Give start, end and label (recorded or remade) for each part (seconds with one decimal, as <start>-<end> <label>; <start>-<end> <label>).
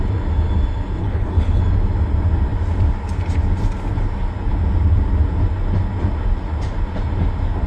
0.0-1.0 recorded; 1.0-1.6 remade; 1.6-7.7 recorded